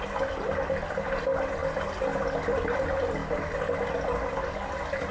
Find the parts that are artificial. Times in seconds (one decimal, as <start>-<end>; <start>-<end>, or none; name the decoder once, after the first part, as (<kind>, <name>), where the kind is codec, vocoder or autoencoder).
none